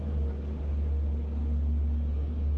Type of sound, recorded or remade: recorded